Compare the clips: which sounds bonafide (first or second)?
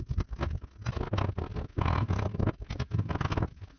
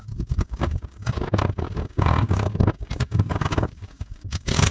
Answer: first